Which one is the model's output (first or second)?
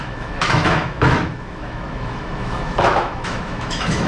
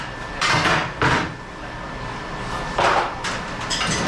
first